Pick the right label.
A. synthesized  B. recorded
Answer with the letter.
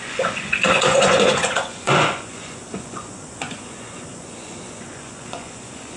A